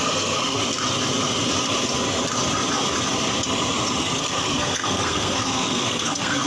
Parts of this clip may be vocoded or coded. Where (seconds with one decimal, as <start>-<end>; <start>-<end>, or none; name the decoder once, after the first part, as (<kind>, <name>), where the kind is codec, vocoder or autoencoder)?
0.0-0.6 (codec, SNAC); 4.0-6.5